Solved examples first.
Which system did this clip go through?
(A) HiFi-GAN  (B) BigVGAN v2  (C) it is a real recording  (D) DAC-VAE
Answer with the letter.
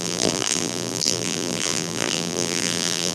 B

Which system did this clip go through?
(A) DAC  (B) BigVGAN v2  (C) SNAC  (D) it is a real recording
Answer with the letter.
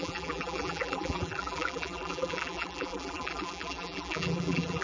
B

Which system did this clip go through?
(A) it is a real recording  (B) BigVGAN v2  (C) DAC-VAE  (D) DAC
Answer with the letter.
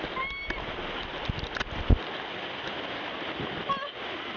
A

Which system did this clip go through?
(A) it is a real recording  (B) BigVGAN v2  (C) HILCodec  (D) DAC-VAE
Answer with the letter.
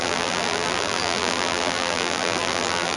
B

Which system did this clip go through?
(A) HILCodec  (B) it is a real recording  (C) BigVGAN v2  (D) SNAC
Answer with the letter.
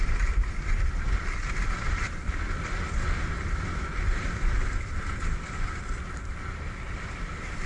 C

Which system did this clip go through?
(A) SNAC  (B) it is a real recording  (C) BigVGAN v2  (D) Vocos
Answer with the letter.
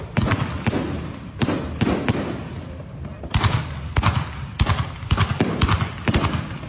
C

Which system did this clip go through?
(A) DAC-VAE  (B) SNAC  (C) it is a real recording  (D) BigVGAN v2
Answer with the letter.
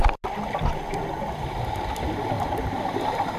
C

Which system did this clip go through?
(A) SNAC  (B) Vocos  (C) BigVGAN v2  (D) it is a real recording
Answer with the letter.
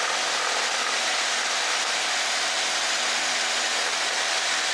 D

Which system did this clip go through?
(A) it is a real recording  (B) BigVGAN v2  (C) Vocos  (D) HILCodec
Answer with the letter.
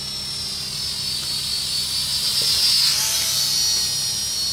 A